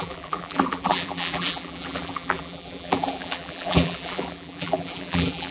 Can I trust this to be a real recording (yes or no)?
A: no